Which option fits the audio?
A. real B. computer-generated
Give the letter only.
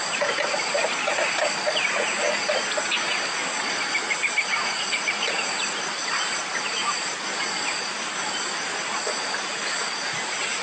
A